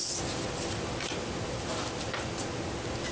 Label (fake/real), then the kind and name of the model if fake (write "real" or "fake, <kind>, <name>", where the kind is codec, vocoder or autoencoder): real